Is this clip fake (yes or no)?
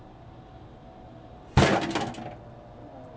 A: no